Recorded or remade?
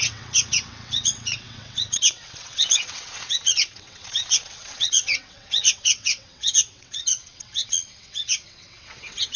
remade